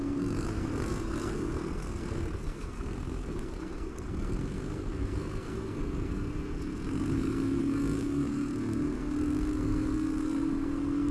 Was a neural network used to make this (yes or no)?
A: yes